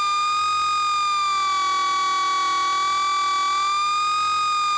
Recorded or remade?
recorded